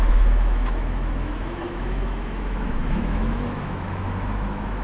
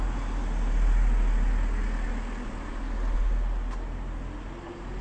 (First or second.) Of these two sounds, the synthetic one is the first